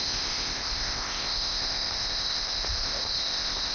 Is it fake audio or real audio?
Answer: fake